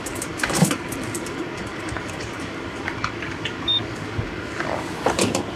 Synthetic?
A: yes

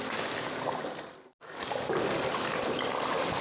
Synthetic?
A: no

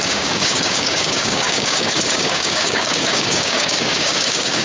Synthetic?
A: yes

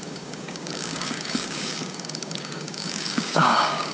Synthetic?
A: yes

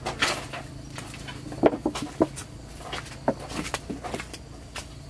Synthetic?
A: no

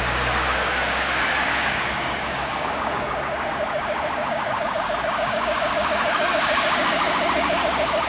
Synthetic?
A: yes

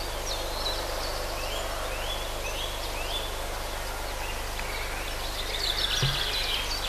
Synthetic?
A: no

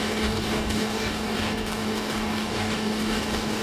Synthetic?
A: yes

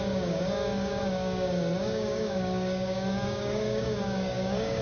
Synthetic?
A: yes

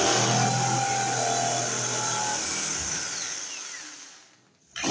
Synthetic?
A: no